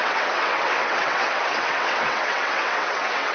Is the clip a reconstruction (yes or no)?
yes